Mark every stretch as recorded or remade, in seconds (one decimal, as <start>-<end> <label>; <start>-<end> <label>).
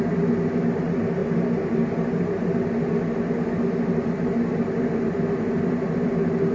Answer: 0.0-6.5 recorded